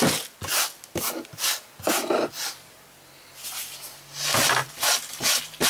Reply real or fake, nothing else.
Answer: real